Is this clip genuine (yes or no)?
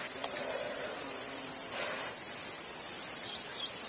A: no